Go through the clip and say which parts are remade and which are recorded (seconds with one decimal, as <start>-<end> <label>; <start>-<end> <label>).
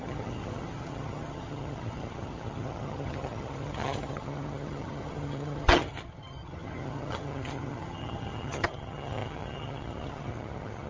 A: 0.0-10.9 remade